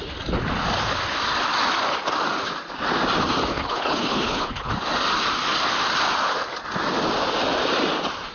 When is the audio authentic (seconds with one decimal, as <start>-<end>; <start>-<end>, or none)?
0.0-3.5; 4.7-8.3